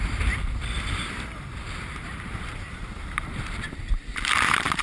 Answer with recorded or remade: remade